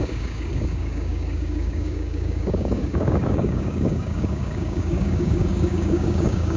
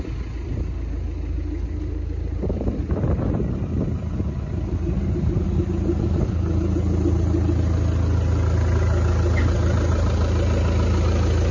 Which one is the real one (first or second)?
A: second